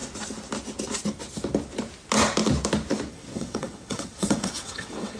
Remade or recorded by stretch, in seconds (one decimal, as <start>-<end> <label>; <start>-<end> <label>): 0.0-3.1 recorded; 3.1-5.2 remade